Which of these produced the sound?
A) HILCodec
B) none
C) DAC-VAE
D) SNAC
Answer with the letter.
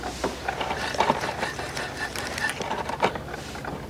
B